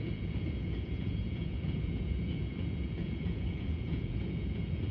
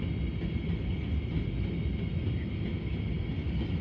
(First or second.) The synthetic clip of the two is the first